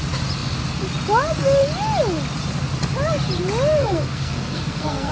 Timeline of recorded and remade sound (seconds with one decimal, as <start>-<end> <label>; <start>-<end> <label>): 0.0-3.8 recorded; 3.8-5.1 remade